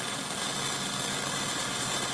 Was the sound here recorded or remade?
recorded